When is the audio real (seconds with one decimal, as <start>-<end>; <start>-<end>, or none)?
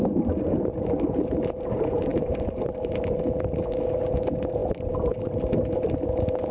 0.0-2.1; 2.6-6.5